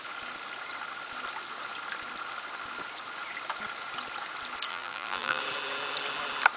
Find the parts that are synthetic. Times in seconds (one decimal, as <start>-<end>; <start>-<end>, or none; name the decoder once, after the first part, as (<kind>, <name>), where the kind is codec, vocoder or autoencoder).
4.7-5.4 (vocoder, BigVGAN v2)